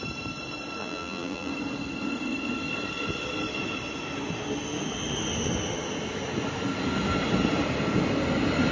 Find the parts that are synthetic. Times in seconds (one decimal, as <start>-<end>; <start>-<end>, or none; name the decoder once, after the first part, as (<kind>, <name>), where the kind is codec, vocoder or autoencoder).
0.8-1.5 (vocoder, BigVGAN v2)